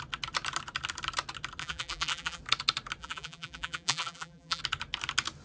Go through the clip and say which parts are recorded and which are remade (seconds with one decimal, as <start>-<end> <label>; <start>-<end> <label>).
0.0-1.6 recorded; 1.6-2.4 remade; 2.4-3.0 recorded; 3.0-4.6 remade; 4.6-5.4 recorded